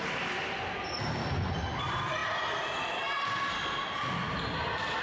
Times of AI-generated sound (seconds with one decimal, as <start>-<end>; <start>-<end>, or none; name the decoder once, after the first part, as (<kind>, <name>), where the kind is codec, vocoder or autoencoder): none